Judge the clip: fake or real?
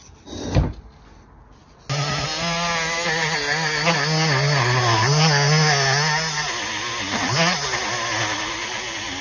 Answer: real